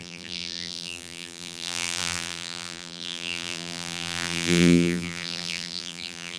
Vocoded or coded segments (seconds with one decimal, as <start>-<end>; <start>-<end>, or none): 0.0-6.4